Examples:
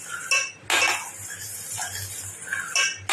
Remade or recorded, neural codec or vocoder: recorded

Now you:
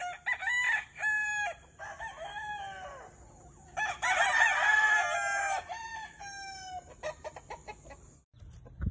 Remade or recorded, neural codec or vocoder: recorded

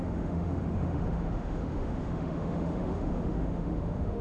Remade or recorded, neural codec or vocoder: remade, autoencoder, DAC-VAE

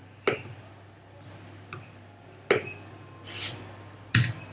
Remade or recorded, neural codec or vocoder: recorded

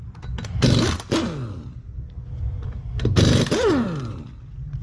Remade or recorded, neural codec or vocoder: recorded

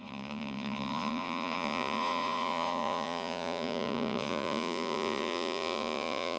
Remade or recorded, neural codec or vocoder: remade, vocoder, Vocos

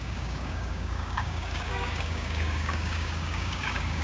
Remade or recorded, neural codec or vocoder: remade, codec, DAC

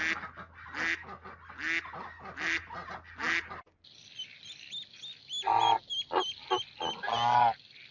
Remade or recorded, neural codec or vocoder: recorded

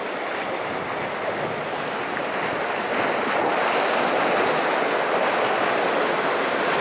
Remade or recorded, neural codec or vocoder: recorded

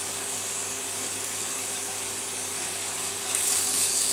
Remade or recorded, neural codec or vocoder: remade, codec, DAC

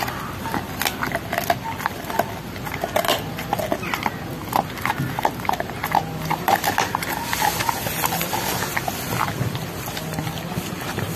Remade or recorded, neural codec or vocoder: recorded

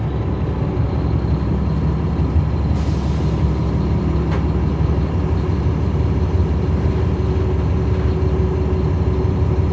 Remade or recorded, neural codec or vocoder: recorded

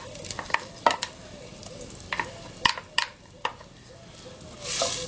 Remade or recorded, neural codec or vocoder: recorded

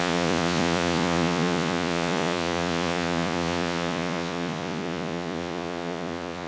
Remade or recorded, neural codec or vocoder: remade, vocoder, Vocos